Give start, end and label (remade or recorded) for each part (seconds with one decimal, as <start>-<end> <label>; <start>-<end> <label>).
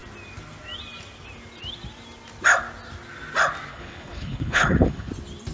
0.0-3.7 recorded; 3.7-5.1 remade; 5.1-5.5 recorded